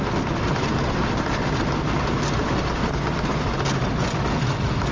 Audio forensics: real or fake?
real